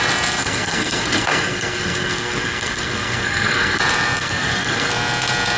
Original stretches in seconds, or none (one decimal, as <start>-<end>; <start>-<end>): 0.0-0.4; 3.8-4.2; 4.9-5.6